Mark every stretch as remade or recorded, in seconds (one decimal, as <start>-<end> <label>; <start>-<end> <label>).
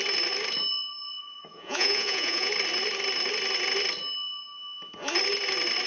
0.0-1.2 recorded; 1.2-2.5 remade; 2.5-5.9 recorded